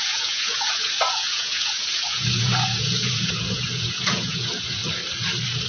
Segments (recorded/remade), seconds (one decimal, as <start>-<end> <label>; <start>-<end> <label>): 0.0-4.8 remade; 4.8-5.7 recorded